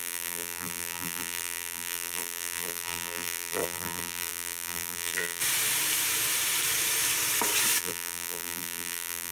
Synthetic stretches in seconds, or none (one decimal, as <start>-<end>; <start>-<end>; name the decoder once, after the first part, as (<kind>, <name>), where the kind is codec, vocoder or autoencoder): 0.0-5.4 (vocoder, BigVGAN v2); 7.8-9.3